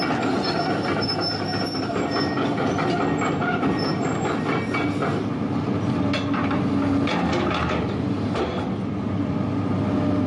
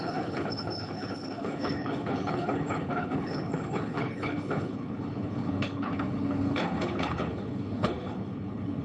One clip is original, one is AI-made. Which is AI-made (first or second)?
second